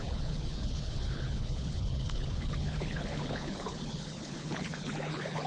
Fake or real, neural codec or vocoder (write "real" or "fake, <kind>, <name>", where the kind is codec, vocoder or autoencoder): fake, codec, HILCodec